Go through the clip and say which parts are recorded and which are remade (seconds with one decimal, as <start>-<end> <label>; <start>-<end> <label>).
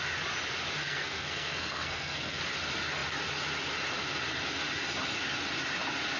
0.0-0.8 recorded; 0.8-2.4 remade; 2.4-6.2 recorded